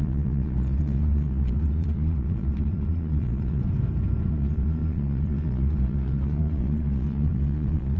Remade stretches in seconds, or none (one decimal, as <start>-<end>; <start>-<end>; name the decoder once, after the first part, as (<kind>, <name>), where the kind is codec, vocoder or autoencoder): 0.0-3.6 (vocoder, Vocos); 4.3-8.0